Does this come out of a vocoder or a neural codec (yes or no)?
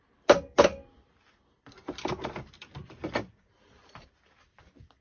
yes